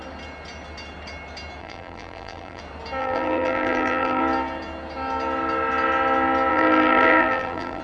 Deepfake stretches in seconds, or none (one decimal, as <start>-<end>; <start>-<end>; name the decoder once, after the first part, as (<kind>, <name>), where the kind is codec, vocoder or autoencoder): 1.6-2.6 (vocoder, BigVGAN v2); 3.0-4.2; 6.5-7.8